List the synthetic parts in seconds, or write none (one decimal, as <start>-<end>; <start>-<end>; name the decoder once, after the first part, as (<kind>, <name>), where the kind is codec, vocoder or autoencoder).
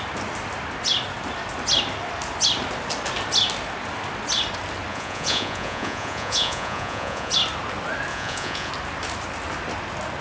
4.9-7.3 (vocoder, Vocos); 8.1-8.7